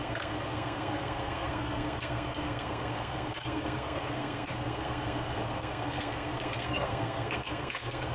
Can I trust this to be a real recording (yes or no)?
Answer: no